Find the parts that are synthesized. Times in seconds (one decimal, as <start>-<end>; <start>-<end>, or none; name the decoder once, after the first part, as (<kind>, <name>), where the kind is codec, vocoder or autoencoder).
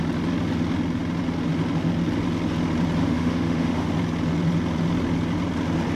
3.0-3.9 (autoencoder, DAC-VAE)